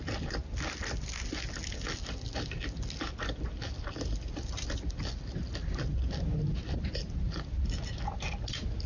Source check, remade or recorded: recorded